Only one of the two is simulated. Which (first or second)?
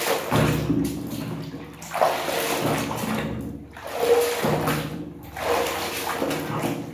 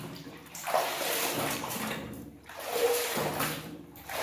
second